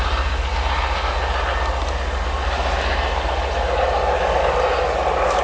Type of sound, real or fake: real